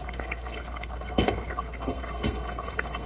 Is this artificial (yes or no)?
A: yes